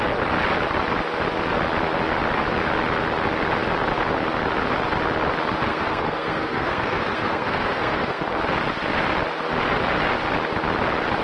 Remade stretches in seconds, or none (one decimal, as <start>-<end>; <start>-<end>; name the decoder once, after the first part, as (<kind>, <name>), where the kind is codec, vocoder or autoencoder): 5.7-8.2 (codec, SNAC)